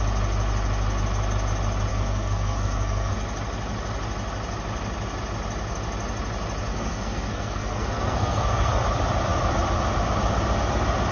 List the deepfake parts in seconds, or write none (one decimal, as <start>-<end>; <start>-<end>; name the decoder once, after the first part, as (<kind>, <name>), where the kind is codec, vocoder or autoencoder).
1.9-3.1 (codec, SNAC); 6.7-8.8